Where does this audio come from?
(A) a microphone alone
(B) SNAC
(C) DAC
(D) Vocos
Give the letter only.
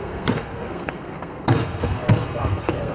B